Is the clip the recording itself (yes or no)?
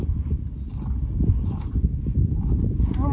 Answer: yes